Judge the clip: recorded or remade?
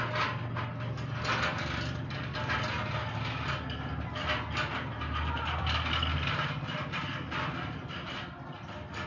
remade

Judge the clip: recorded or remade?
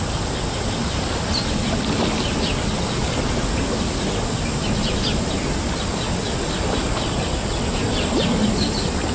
recorded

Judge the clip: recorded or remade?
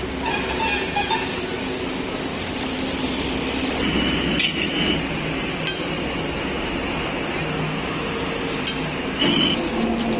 recorded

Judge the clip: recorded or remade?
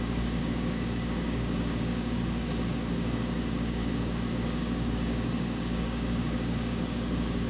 remade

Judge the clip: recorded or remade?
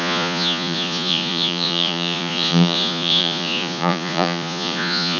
remade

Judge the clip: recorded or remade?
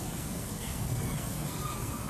remade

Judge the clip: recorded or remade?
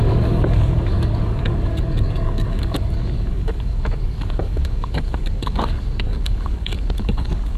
remade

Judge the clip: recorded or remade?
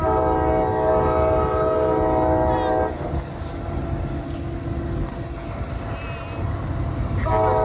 recorded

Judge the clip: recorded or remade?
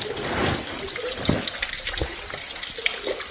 recorded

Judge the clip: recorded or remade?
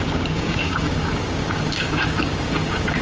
remade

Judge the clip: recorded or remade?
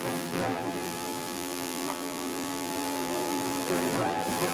remade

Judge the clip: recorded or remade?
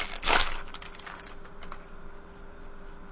recorded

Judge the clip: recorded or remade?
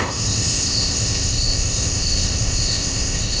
remade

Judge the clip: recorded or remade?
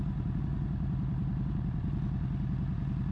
recorded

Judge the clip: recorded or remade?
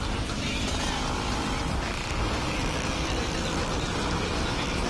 recorded